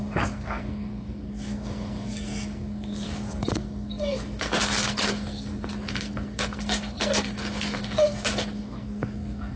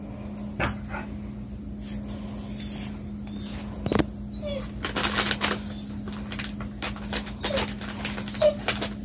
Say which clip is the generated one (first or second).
first